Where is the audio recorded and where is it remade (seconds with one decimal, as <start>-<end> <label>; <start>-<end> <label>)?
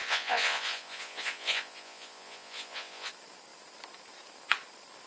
0.0-3.1 remade; 3.1-5.1 recorded